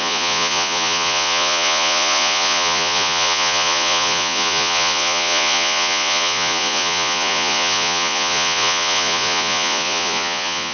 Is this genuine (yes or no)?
no